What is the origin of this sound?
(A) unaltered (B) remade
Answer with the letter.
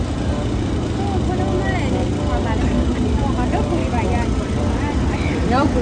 A